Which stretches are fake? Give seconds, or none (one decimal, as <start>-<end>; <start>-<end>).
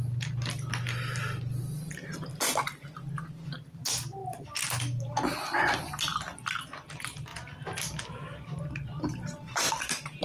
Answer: 6.1-6.6; 7.3-9.7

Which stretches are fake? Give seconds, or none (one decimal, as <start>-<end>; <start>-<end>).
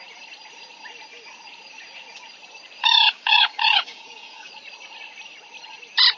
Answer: 2.8-4.5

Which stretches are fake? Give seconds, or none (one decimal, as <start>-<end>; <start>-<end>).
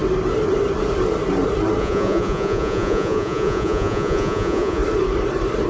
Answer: 1.8-4.8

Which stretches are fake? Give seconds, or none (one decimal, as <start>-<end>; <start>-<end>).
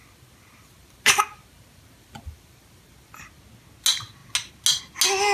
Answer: 0.0-3.2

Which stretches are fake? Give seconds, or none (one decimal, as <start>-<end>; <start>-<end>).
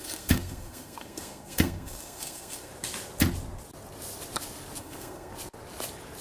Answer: 0.0-2.7; 4.8-5.3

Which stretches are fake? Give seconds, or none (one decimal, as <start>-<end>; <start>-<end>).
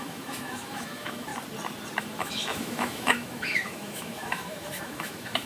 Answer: 0.0-1.3; 2.0-5.5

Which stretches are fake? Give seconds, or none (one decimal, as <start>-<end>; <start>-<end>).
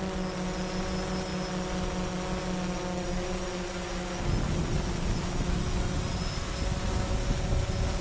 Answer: none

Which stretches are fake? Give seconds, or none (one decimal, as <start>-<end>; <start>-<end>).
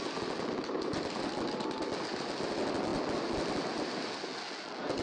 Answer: none